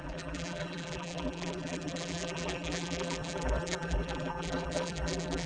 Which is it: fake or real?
fake